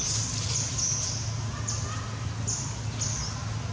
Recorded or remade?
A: recorded